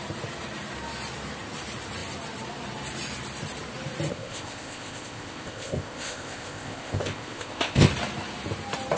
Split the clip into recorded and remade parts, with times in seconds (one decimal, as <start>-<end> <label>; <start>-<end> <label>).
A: 0.0-4.1 recorded; 4.1-7.9 remade; 7.9-9.0 recorded